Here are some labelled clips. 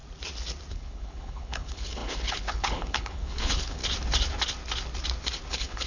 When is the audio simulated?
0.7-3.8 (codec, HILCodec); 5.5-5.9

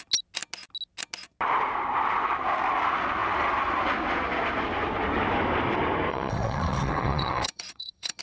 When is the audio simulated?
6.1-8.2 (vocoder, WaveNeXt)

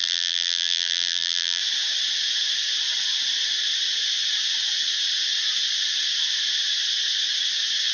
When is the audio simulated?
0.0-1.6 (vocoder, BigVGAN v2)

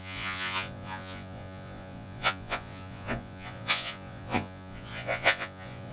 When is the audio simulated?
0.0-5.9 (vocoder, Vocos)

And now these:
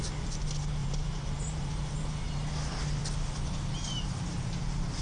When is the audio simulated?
0.8-2.5 (vocoder, BigVGAN v2)

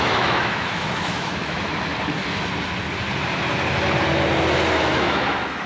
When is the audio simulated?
0.0-1.9 (autoencoder, DAC-VAE); 4.7-5.7

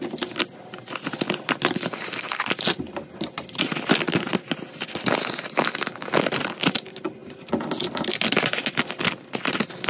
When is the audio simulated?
none

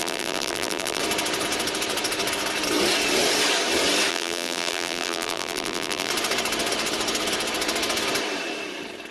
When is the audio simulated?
0.0-1.0 (vocoder, BigVGAN v2); 4.1-6.1